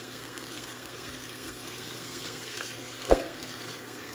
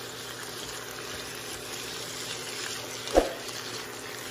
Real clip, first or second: second